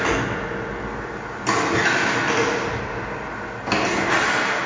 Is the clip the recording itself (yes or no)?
yes